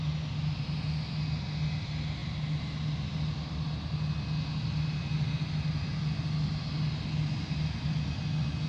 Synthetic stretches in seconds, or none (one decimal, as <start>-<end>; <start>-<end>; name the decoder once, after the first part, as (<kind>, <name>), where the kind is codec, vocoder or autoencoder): none